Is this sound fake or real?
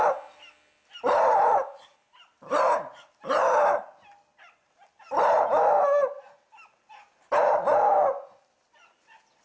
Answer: real